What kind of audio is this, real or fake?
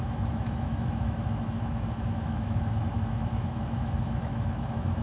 fake